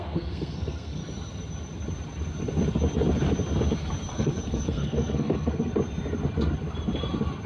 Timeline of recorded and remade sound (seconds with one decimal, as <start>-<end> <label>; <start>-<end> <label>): 0.0-1.0 remade; 1.0-4.1 recorded; 4.1-5.7 remade; 5.7-7.5 recorded